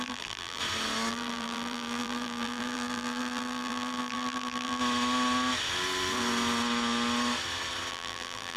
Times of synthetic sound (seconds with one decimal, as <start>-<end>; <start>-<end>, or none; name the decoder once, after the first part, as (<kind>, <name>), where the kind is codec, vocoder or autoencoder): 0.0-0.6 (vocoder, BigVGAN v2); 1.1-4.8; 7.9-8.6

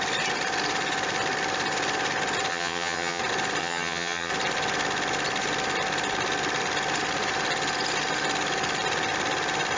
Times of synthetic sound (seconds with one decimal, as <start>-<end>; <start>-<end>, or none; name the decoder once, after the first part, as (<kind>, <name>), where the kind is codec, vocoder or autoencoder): 2.5-3.2 (vocoder, HiFi-GAN); 3.6-4.3

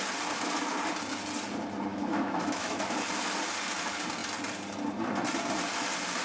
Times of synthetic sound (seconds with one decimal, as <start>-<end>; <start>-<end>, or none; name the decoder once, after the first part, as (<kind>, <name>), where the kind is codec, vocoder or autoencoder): 1.9-2.8 (autoencoder, DAC-VAE)